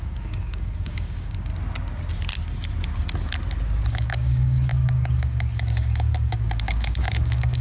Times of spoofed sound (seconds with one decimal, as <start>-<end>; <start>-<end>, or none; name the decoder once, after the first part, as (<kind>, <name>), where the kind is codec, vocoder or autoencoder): 0.0-1.5 (codec, DAC); 3.9-7.6